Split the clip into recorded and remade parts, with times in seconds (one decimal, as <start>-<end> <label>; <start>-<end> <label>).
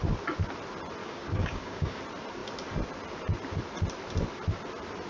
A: 0.0-1.0 recorded; 1.0-2.0 remade; 2.0-5.1 recorded